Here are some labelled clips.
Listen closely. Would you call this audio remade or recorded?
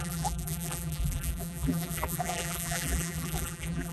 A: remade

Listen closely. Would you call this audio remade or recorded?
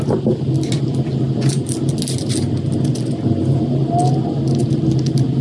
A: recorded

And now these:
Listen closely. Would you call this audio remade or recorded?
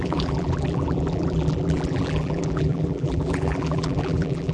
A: remade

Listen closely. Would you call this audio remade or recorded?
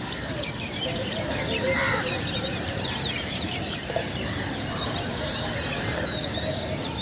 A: remade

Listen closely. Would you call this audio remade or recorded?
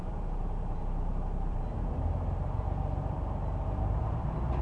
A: remade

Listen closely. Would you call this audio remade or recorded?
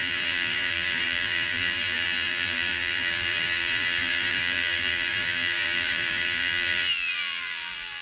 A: remade